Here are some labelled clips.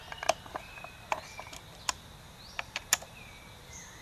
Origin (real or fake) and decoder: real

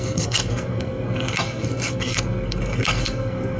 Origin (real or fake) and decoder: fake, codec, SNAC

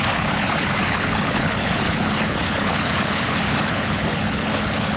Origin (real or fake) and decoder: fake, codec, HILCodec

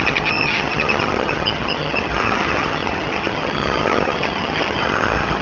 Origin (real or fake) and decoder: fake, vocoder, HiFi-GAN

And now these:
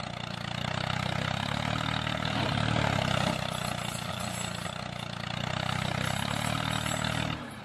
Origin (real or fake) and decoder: real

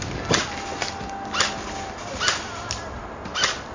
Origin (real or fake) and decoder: real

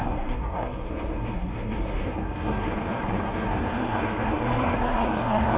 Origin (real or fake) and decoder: fake, codec, SNAC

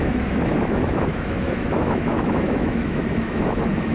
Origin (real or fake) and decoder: fake, autoencoder, DAC-VAE